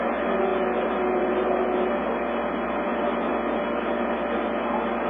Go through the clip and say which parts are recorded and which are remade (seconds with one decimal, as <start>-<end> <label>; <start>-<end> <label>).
0.0-5.1 recorded